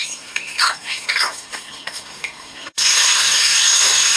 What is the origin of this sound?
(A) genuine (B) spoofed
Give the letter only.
B